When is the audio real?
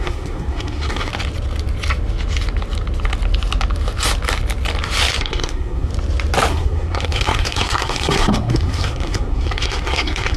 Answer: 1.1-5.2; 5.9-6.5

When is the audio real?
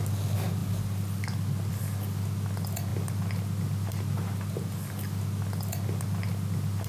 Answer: 0.0-6.9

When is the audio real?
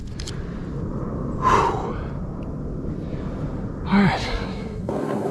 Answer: 0.0-4.2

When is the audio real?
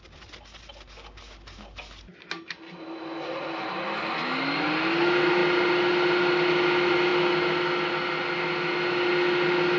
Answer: 0.0-9.8